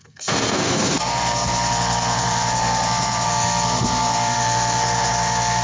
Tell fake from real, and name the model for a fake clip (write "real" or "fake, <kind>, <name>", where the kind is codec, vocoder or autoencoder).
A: fake, codec, SNAC